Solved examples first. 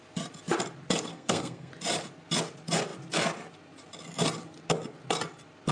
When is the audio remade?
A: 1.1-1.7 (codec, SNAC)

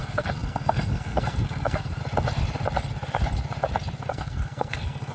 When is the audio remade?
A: 0.0-2.0 (codec, SNAC); 4.1-5.1

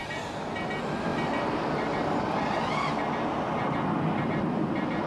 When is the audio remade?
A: none

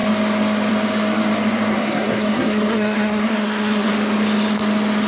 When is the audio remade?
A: 1.7-3.9 (codec, SNAC)

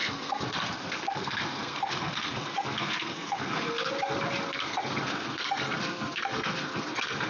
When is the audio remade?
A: 0.0-3.9 (codec, SNAC); 4.5-7.3

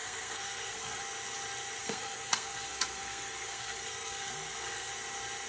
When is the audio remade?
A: 0.0-1.0 (codec, SNAC); 1.8-4.9

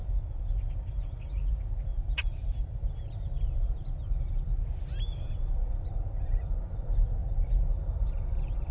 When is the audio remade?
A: none

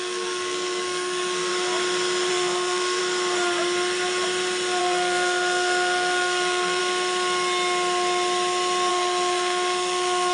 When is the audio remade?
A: 0.0-1.5 (codec, SNAC); 2.3-3.0; 4.8-6.8; 8.9-10.3